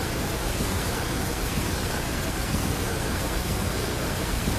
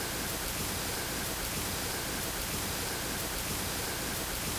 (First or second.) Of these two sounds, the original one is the second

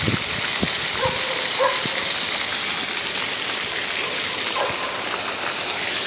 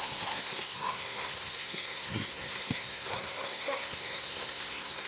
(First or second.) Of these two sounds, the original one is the first